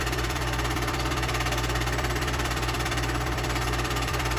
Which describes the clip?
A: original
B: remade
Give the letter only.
B